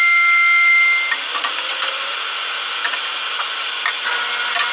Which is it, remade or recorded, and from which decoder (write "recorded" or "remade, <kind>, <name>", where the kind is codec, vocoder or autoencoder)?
recorded